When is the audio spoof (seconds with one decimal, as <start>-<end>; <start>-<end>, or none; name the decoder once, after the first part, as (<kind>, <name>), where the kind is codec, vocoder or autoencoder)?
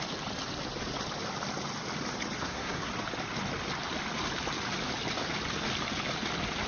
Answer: 2.4-2.9 (codec, SNAC)